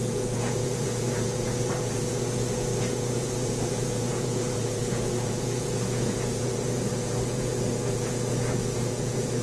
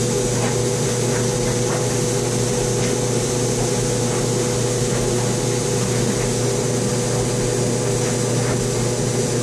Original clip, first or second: second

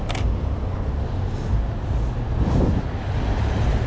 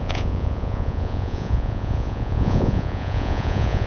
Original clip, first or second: first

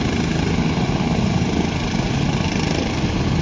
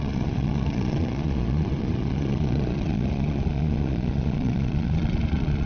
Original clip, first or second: first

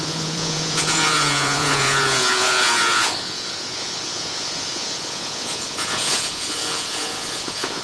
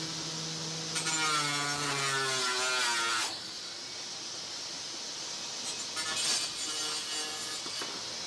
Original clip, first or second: second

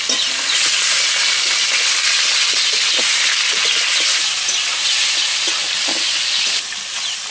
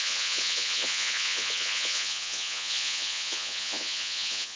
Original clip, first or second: first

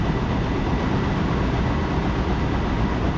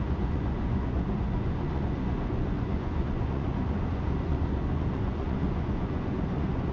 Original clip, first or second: first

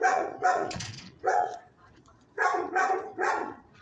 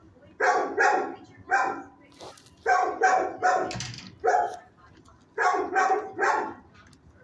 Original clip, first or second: second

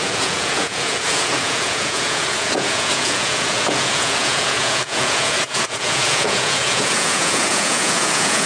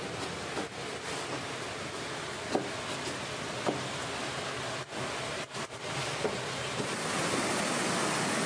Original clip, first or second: second